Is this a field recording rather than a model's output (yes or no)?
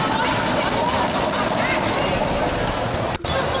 yes